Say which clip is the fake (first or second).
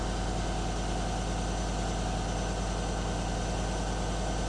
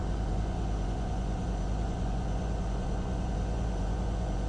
second